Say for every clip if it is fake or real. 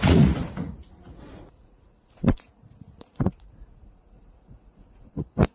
fake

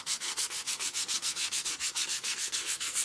fake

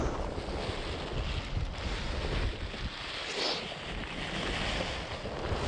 real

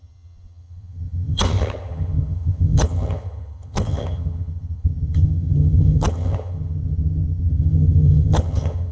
fake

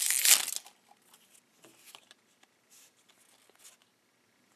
real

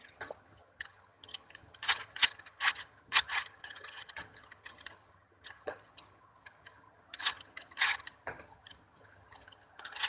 fake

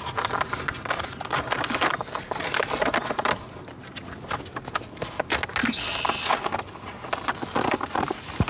real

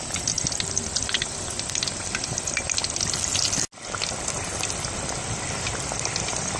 real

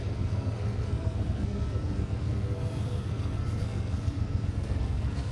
fake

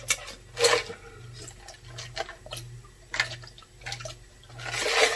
real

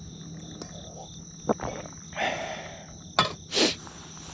real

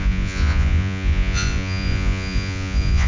fake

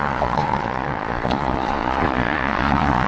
fake